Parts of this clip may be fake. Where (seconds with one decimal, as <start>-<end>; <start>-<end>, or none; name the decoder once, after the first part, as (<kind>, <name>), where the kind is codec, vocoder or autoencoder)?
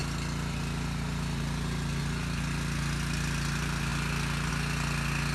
none